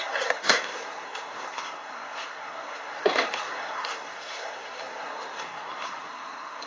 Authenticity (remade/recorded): remade